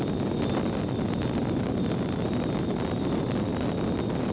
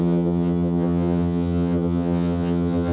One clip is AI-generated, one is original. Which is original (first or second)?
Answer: first